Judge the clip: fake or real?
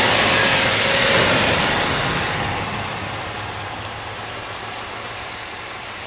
real